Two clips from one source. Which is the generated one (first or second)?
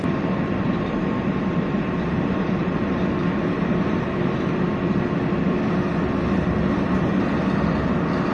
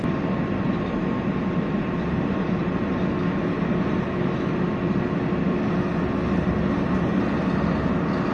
first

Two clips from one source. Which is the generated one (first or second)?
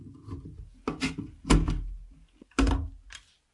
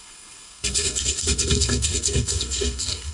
second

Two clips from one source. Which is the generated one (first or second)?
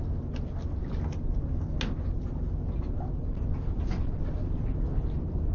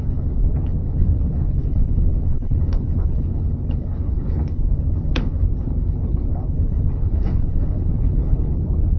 second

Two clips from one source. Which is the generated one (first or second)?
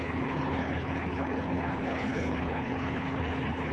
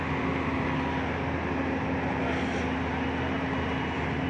first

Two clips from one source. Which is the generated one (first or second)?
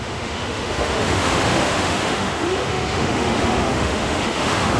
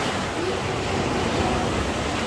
first